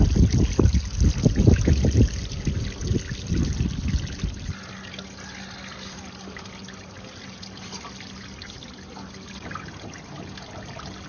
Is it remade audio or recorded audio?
recorded